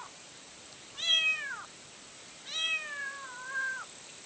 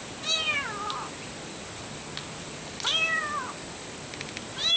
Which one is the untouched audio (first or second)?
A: second